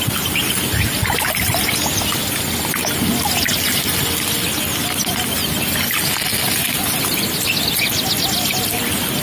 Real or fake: real